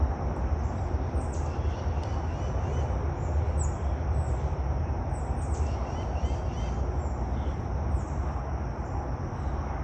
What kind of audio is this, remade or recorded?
recorded